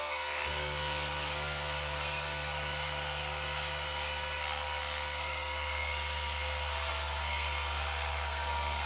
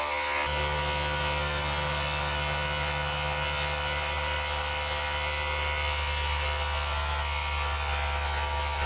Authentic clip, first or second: second